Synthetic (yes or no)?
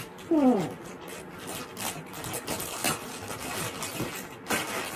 no